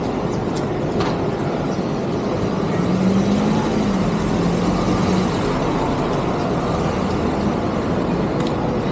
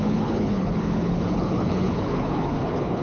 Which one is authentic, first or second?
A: first